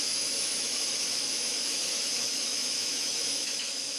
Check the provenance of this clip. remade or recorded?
remade